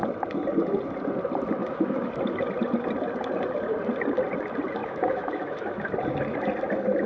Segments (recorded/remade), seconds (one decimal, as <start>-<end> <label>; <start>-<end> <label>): 0.0-1.6 recorded; 1.6-2.1 remade; 2.1-4.8 recorded; 4.8-5.9 remade; 5.9-7.1 recorded